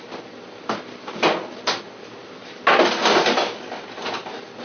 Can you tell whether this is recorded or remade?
recorded